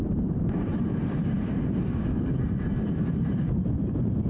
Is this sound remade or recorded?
remade